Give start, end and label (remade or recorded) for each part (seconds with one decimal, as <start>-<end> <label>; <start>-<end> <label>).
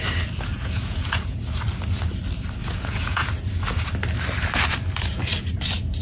0.0-0.5 recorded; 0.5-1.4 remade; 1.4-2.6 recorded; 2.6-3.3 remade; 3.3-6.0 recorded